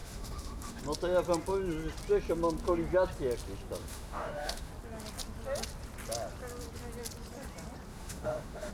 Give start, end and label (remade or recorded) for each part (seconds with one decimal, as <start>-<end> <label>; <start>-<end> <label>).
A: 0.0-0.8 remade; 0.8-3.8 recorded; 3.8-4.7 remade; 4.7-7.9 recorded; 7.9-8.7 remade